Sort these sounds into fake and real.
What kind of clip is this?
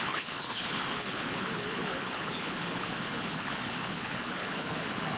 fake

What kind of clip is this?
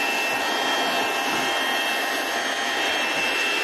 real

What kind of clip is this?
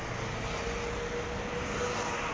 real